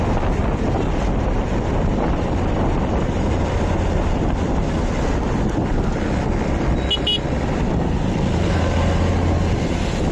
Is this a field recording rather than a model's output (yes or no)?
yes